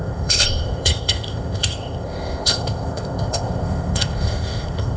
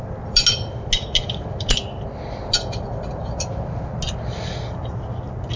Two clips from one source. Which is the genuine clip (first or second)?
second